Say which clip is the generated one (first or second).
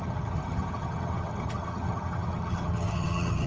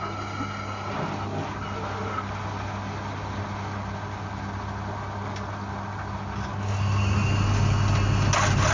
first